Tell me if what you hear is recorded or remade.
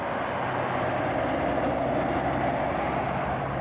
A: recorded